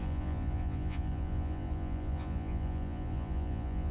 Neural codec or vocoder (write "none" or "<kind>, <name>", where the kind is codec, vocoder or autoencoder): vocoder, Vocos